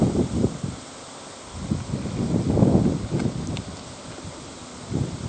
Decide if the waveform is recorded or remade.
recorded